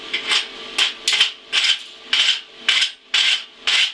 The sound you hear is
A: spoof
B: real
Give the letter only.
B